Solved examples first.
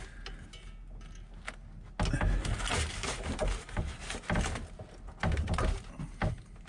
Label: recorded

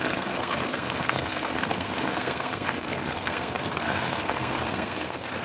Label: remade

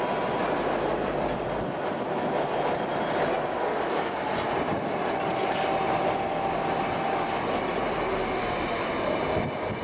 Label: recorded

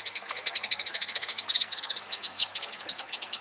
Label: remade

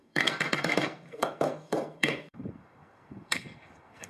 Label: remade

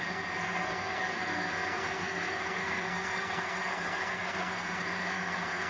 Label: remade